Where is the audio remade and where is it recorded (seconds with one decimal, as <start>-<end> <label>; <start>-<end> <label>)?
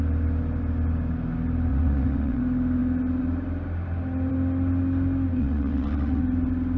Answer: 0.0-1.7 recorded; 1.7-2.4 remade; 2.4-5.4 recorded; 5.4-6.2 remade; 6.2-6.8 recorded